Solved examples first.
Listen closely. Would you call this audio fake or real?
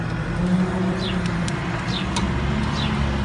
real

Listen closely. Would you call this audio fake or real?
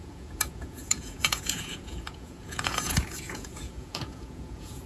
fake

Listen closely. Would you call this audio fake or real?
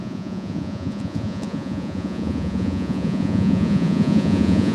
fake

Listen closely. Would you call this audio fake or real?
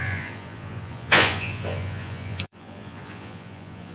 fake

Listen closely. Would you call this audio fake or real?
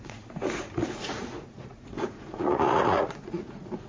fake